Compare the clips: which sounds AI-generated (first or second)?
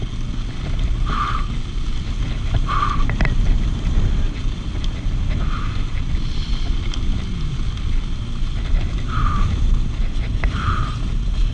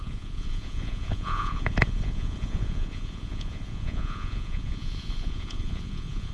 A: second